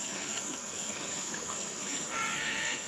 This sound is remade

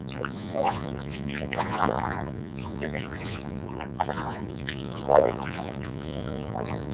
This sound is remade